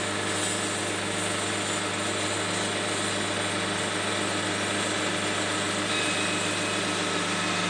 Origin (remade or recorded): recorded